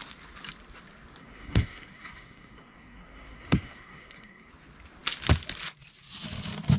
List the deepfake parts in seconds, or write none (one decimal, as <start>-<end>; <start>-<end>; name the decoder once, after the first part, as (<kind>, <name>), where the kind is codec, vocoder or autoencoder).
1.2-4.5 (codec, SNAC)

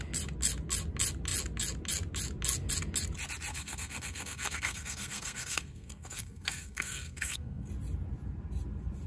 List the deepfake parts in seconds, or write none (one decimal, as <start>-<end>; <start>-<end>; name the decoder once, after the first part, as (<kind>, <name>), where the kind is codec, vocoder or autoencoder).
3.5-7.7 (codec, SNAC)

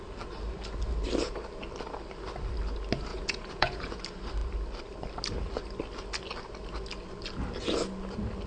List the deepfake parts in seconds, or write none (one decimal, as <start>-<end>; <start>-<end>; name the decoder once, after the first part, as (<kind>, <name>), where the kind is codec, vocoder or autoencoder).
3.1-4.0 (vocoder, Vocos)

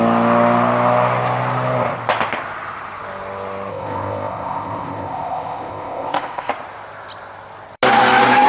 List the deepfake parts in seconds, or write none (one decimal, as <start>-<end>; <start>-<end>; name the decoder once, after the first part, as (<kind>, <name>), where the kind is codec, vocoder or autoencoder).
3.7-6.5 (codec, ZipCodec)

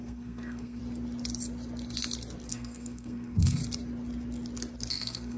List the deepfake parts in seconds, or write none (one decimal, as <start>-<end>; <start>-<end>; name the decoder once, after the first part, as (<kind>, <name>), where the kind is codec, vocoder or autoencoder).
0.0-0.8 (codec, SNAC); 2.5-3.6; 4.9-5.4

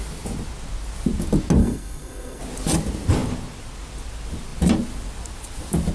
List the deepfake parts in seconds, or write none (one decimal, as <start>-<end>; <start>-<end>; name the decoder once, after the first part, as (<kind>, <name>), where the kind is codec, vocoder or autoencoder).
1.6-2.4 (codec, SNAC)